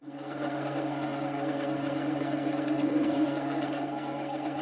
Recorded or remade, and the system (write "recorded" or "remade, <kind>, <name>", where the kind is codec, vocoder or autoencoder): remade, codec, SNAC